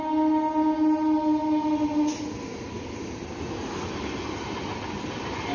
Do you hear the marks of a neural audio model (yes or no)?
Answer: no